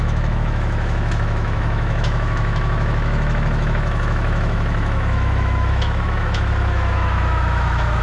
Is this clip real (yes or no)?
no